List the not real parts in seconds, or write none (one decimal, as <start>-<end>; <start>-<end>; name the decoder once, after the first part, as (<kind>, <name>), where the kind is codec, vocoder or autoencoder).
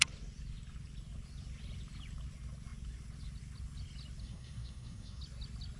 4.2-5.2 (codec, SNAC)